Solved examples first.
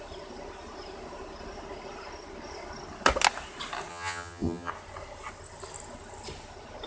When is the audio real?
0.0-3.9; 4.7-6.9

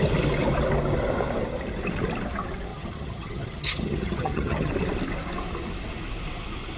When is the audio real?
0.0-2.7; 4.7-6.8

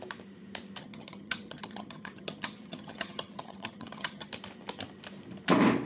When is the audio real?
0.0-0.8; 4.3-5.9

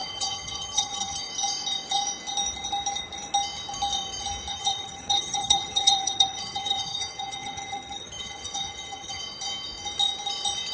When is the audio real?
1.3-4.5; 9.2-10.7